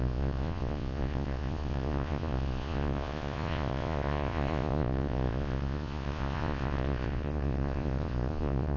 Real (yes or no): no